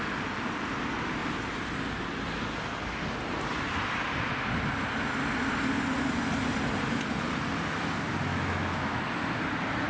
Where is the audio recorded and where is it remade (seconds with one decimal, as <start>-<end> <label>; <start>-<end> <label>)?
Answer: 0.0-8.3 recorded; 8.3-9.0 remade; 9.0-9.9 recorded

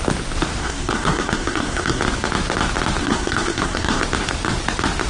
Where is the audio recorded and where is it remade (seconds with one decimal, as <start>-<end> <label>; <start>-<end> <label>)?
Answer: 0.0-0.6 recorded; 0.6-2.0 remade; 2.0-3.0 recorded; 3.0-4.0 remade; 4.0-5.1 recorded

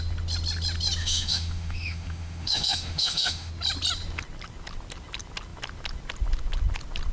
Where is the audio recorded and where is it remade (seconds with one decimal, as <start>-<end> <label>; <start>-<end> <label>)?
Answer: 0.0-1.0 recorded; 1.0-3.5 remade; 3.5-7.1 recorded

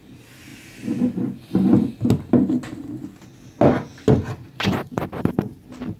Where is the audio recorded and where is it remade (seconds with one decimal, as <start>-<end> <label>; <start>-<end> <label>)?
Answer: 0.0-6.0 recorded

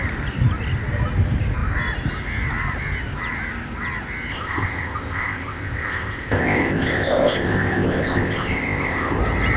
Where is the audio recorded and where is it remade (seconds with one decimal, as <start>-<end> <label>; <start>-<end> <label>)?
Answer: 0.0-4.3 recorded; 4.3-9.2 remade; 9.2-9.6 recorded

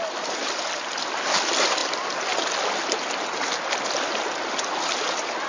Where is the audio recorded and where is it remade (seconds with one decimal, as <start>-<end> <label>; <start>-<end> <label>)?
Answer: 0.0-5.5 recorded